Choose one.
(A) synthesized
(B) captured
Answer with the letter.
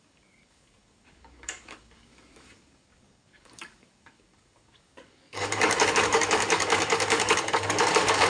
A